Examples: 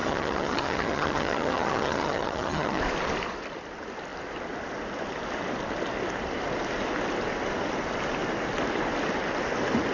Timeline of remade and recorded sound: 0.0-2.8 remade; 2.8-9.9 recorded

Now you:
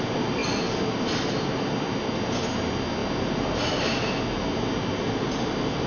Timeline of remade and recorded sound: 0.0-5.9 recorded

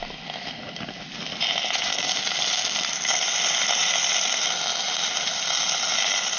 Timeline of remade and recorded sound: 0.0-6.4 recorded

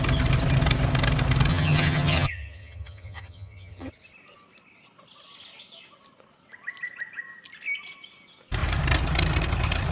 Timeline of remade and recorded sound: 0.0-1.5 recorded; 1.5-3.9 remade; 3.9-9.9 recorded